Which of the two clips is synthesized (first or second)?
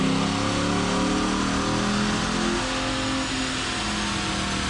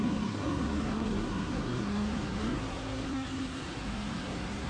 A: second